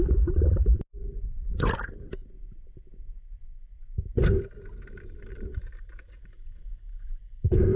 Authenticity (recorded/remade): recorded